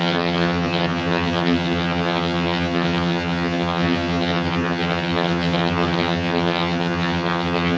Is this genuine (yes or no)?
no